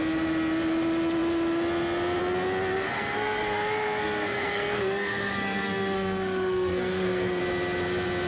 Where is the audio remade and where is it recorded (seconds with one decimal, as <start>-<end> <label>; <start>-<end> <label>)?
0.0-2.7 recorded; 2.7-7.4 remade; 7.4-8.3 recorded

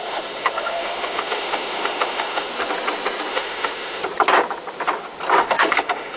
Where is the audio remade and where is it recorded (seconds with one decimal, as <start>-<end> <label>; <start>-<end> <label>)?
0.0-2.5 remade; 2.5-3.3 recorded; 3.3-4.0 remade; 4.0-5.4 recorded; 5.4-6.2 remade

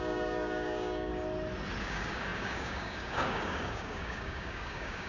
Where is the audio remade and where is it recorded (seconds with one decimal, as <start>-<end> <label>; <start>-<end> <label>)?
0.0-1.1 remade; 1.1-1.8 recorded; 1.8-5.1 remade

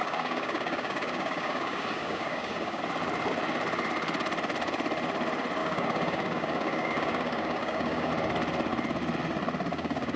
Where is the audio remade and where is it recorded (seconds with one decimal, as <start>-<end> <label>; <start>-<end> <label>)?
0.0-2.8 remade; 2.8-5.6 recorded; 5.6-8.1 remade; 8.1-9.7 recorded; 9.7-10.2 remade

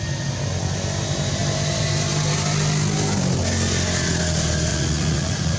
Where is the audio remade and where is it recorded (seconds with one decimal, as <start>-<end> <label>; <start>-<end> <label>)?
0.0-4.7 recorded; 4.7-5.6 remade